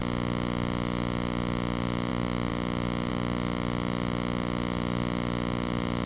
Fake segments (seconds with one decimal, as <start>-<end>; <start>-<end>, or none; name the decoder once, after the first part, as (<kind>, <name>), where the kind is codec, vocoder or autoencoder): none